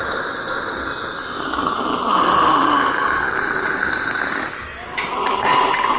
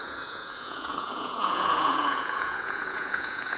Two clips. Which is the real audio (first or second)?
first